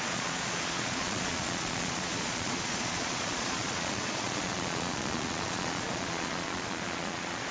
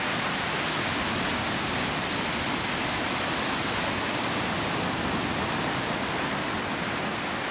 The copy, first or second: first